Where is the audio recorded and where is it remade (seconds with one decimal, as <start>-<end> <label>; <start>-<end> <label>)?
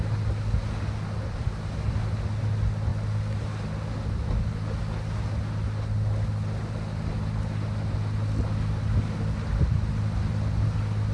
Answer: 0.0-11.1 recorded